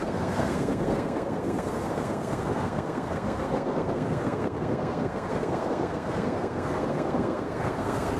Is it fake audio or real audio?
fake